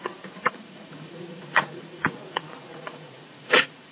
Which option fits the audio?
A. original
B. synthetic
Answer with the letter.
B